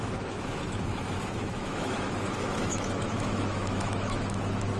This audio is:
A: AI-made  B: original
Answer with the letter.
A